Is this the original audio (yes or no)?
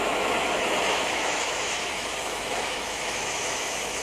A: no